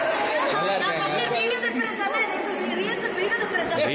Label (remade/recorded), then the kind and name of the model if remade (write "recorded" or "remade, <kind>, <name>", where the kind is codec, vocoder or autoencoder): recorded